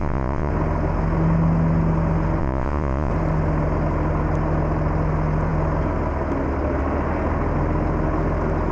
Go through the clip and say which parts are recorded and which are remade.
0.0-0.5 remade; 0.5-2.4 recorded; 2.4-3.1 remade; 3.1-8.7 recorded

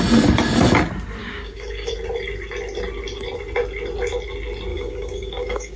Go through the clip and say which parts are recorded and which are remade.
0.0-1.2 recorded; 1.2-1.9 remade; 1.9-4.7 recorded; 4.7-5.8 remade

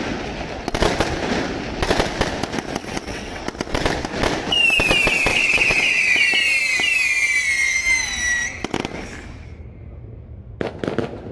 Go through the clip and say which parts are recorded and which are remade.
0.0-2.8 recorded; 2.8-3.4 remade; 3.4-5.3 recorded; 5.3-6.2 remade; 6.2-11.3 recorded

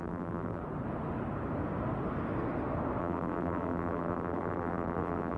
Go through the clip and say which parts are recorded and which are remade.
0.0-0.6 remade; 0.6-3.0 recorded; 3.0-5.4 remade

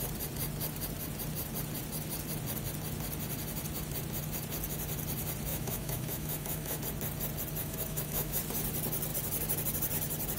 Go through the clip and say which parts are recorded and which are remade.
0.0-5.5 recorded; 5.5-6.8 remade; 6.8-7.6 recorded; 7.6-8.4 remade; 8.4-10.4 recorded

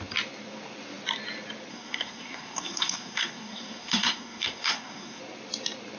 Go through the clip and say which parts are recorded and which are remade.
0.0-1.7 recorded; 1.7-5.2 remade; 5.2-6.0 recorded

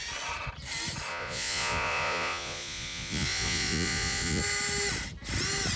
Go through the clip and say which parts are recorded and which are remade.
0.0-1.1 recorded; 1.1-4.4 remade; 4.4-5.8 recorded

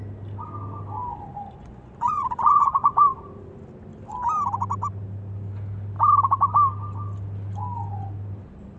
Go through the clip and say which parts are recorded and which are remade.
0.0-1.3 recorded; 1.3-3.2 remade; 3.2-8.8 recorded